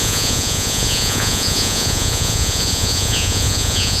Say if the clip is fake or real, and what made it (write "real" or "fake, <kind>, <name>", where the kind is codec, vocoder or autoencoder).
fake, vocoder, Vocos